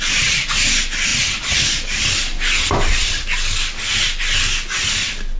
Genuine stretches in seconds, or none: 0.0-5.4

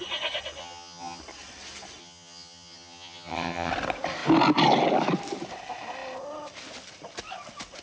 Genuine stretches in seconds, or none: 0.0-0.6; 1.2-2.0; 3.7-7.8

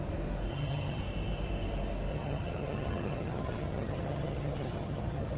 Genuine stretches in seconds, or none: 0.0-0.5; 1.0-2.1

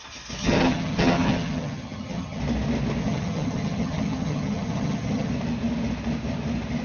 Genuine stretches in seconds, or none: 0.0-0.4; 2.4-3.0; 5.3-6.8

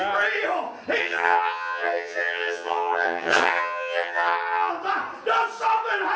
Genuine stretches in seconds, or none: 0.0-1.0; 4.7-6.2

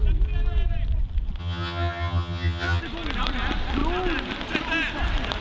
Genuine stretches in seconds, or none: 0.0-1.4; 2.8-5.4

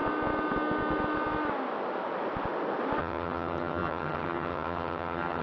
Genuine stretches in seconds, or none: 0.0-3.0

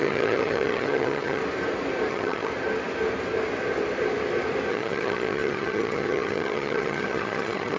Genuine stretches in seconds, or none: 1.4-2.1; 2.5-4.7